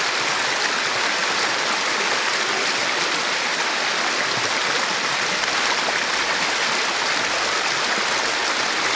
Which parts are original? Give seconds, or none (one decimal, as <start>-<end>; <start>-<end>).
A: 0.0-9.0